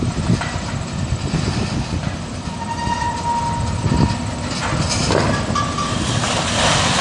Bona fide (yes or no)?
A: yes